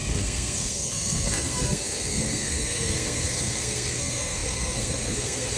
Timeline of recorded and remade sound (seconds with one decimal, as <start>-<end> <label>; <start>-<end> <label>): 0.0-5.6 remade